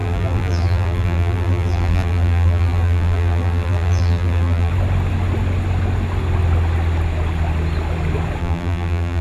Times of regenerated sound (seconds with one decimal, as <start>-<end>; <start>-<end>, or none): 0.0-4.7; 8.4-9.2